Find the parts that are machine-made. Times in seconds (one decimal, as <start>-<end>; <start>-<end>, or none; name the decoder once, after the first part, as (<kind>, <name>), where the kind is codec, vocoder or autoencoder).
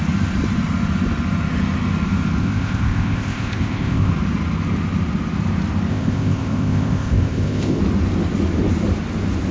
2.4-4.1 (codec, ZipCodec); 5.9-7.8